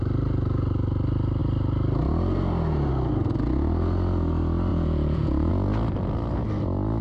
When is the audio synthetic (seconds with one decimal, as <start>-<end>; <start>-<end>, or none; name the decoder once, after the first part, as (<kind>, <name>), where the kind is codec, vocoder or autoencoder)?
4.7-5.5 (vocoder, Vocos)